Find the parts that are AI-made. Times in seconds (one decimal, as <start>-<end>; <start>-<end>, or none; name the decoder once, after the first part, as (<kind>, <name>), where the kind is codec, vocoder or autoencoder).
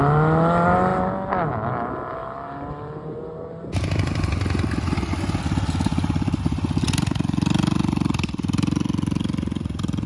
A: none